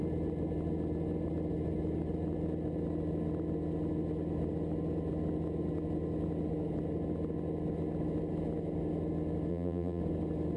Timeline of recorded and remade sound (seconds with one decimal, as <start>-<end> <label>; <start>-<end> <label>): 0.0-9.5 recorded; 9.5-10.0 remade; 10.0-10.6 recorded